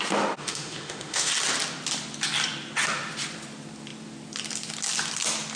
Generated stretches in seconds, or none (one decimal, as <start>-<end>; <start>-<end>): 0.4-1.3